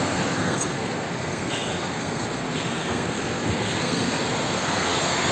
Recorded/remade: remade